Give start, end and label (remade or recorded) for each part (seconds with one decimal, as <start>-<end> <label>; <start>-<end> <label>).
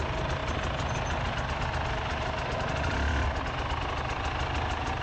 0.0-5.0 recorded